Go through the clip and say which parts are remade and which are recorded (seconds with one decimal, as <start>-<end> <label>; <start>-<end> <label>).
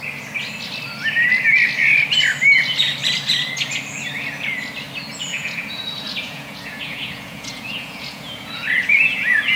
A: 0.0-5.3 recorded; 5.3-9.6 remade